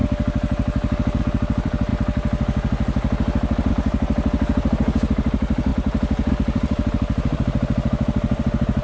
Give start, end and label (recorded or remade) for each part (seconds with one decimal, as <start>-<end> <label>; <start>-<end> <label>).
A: 0.0-1.2 recorded; 1.2-1.9 remade; 1.9-3.7 recorded; 3.7-8.8 remade